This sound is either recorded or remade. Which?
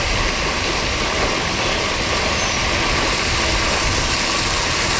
recorded